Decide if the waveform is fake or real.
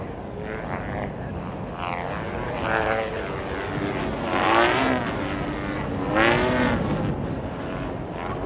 real